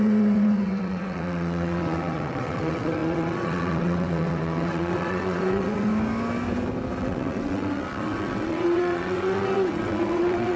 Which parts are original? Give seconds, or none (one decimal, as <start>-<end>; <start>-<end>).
5.9-7.0